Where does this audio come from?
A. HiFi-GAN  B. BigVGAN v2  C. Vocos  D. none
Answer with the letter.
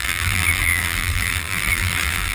B